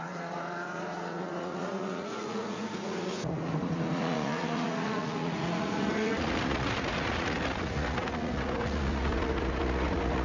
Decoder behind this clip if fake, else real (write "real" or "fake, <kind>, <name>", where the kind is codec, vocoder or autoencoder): fake, vocoder, Vocos